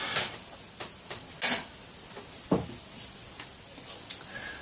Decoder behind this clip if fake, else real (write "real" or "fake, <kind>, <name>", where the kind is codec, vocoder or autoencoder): real